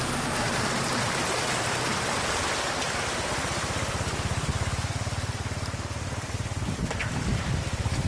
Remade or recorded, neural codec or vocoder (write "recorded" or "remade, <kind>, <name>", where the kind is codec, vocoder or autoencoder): remade, vocoder, BigVGAN v2